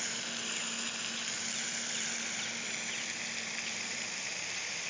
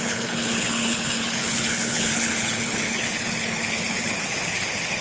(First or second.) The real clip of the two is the first